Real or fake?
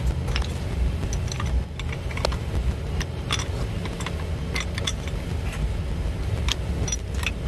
real